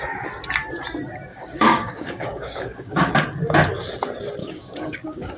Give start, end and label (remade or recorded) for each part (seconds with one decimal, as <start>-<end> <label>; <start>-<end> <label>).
0.0-1.3 recorded; 1.3-3.1 remade; 3.1-4.4 recorded; 4.4-5.4 remade